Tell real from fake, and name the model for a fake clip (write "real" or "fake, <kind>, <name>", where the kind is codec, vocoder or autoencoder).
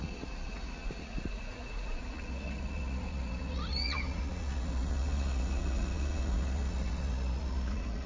fake, vocoder, Vocos